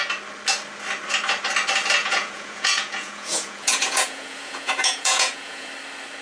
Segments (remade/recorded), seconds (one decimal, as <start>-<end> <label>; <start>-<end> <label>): 0.0-2.0 recorded; 2.0-5.7 remade; 5.7-6.2 recorded